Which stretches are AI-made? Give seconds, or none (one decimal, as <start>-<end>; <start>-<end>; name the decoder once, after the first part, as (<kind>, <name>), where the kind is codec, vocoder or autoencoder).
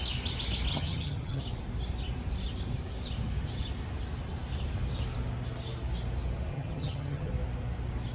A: 0.7-1.4 (vocoder, HiFi-GAN); 6.5-7.3